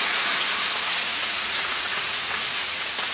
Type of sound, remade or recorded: remade